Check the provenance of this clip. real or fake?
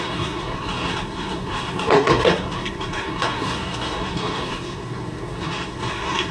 fake